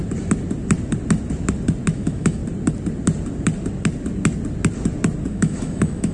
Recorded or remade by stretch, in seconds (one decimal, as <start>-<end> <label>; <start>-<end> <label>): 0.0-1.9 recorded; 1.9-2.4 remade; 2.4-5.3 recorded; 5.3-6.1 remade